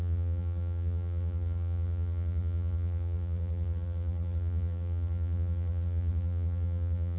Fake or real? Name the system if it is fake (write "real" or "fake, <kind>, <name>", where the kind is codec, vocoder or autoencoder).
fake, vocoder, BigVGAN v2